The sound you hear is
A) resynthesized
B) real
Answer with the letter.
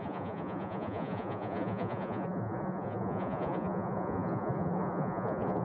A